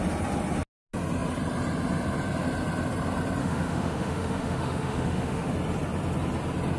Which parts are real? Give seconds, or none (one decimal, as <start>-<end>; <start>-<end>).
0.0-3.4; 5.5-6.8